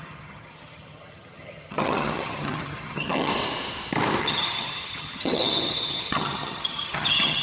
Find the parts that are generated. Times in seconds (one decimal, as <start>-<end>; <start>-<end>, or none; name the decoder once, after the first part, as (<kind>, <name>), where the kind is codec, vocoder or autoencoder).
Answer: 0.0-3.3 (vocoder, HiFi-GAN); 4.2-7.4

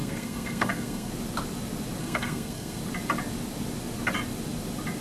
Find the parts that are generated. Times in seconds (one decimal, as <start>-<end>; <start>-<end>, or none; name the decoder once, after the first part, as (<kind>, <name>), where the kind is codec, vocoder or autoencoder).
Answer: 0.0-1.1 (codec, SNAC); 2.0-2.8